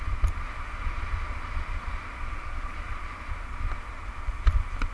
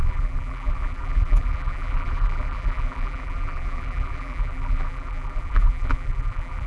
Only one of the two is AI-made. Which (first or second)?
second